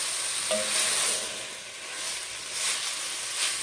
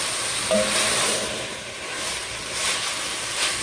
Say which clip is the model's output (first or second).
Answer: second